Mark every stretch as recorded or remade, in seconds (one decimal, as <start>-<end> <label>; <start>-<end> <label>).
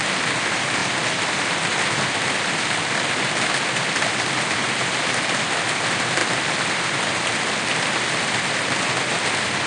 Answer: 0.0-9.7 recorded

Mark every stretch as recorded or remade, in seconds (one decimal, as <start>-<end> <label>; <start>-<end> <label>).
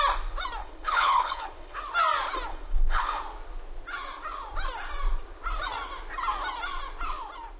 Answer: 0.0-0.6 recorded; 0.6-1.8 remade; 1.8-2.5 recorded; 2.5-3.2 remade; 3.2-7.6 recorded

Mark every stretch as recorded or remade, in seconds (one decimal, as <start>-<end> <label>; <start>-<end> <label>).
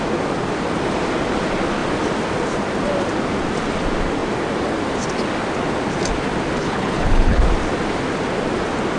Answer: 0.0-6.6 recorded; 6.6-7.4 remade; 7.4-9.0 recorded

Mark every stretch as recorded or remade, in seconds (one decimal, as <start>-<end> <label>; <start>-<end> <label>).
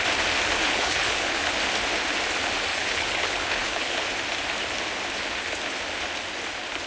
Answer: 0.0-0.6 recorded; 0.6-1.5 remade; 1.5-2.7 recorded; 2.7-4.0 remade; 4.0-6.9 recorded